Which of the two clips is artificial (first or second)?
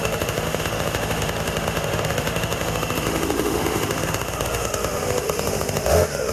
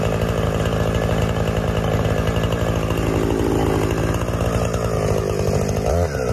first